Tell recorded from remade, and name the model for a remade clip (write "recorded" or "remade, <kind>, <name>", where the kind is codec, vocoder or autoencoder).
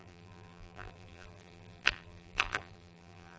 remade, vocoder, BigVGAN v2